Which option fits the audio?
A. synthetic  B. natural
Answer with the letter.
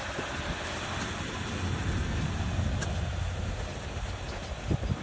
B